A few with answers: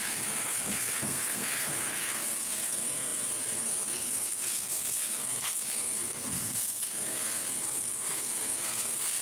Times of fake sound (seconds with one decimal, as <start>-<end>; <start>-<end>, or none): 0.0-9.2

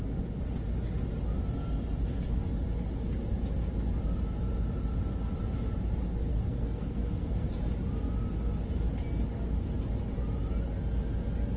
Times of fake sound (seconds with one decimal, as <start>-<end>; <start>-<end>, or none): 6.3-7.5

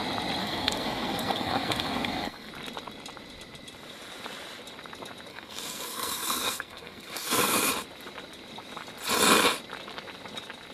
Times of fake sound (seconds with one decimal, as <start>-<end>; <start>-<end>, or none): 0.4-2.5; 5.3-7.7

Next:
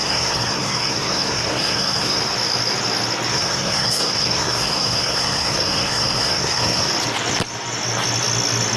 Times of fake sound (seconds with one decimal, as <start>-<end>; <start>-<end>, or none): 0.0-2.2; 3.3-6.9

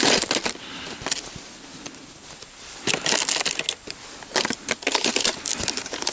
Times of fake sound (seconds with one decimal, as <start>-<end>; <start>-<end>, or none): none

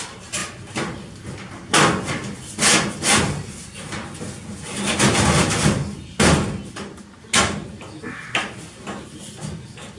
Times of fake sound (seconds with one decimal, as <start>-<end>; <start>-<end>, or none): none